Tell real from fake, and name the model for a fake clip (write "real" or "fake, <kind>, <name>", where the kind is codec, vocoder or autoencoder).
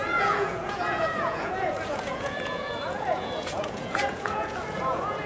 fake, vocoder, Vocos